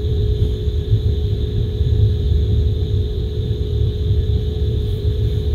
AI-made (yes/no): yes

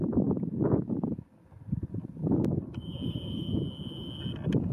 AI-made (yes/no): no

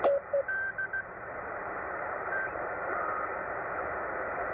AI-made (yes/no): yes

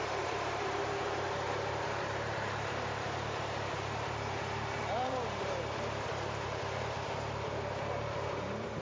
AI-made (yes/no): yes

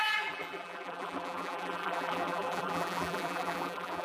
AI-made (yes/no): yes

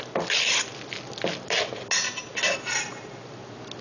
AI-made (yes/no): no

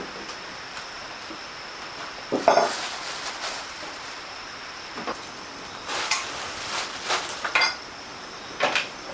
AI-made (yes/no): yes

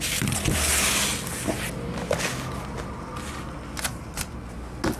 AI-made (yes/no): no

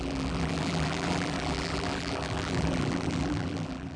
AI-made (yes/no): yes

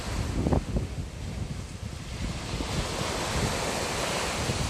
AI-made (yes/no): no